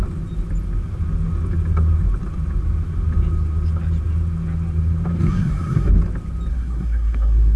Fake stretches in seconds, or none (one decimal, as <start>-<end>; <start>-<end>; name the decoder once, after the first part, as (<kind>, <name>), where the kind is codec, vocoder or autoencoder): 5.2-5.9 (codec, SNAC); 6.5-7.6